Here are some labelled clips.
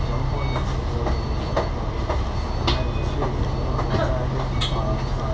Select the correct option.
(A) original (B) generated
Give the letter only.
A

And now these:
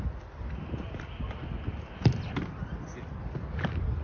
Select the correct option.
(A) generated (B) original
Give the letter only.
B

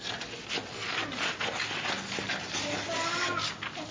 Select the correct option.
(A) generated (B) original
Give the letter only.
B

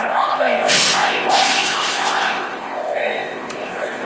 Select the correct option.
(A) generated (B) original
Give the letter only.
A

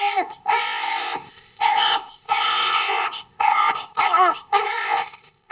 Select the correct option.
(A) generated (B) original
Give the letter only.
A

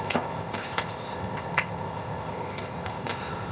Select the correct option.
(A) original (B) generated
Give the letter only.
B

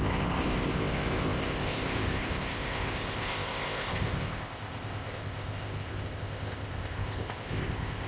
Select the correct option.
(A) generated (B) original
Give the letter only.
A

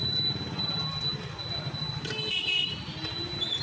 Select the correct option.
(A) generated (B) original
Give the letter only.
B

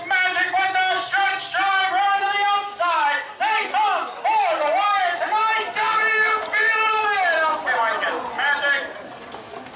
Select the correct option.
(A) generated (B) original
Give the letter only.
B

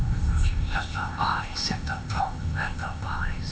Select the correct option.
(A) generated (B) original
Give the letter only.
A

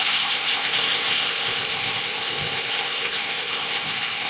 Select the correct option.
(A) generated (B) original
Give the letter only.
A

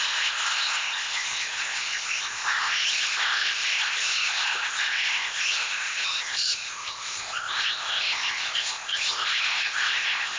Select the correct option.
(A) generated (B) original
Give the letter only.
A